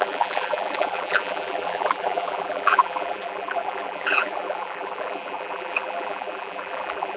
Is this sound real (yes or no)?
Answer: no